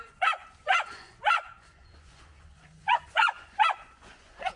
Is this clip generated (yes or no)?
yes